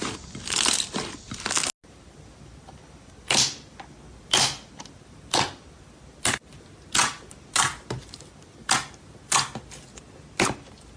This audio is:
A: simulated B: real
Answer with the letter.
B